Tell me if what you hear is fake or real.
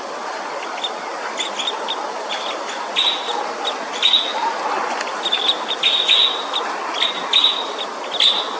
real